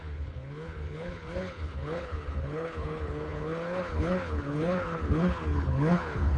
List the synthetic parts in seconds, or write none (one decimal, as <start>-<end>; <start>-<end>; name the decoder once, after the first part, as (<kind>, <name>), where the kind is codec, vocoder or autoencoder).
0.0-6.4 (codec, HILCodec)